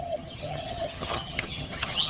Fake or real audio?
fake